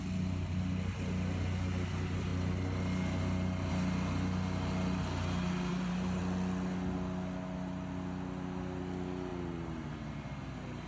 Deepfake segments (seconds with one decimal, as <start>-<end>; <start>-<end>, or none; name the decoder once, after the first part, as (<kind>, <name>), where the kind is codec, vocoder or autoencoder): 5.7-6.2 (vocoder, BigVGAN v2); 9.3-9.9